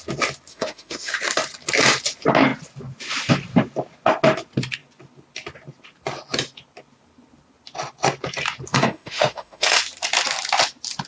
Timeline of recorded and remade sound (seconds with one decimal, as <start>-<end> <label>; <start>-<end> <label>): 0.0-0.5 recorded; 0.5-1.2 remade; 1.2-8.7 recorded; 8.7-9.8 remade; 9.8-11.1 recorded